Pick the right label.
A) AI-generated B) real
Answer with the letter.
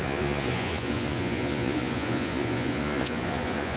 A